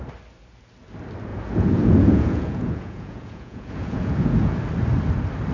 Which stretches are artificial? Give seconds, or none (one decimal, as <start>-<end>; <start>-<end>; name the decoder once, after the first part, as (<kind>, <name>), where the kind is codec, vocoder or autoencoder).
1.3-4.6 (vocoder, Vocos)